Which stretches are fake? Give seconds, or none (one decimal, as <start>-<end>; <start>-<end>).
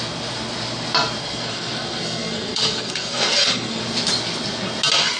1.2-3.8